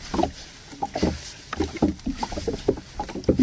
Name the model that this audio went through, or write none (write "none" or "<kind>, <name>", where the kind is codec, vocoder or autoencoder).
none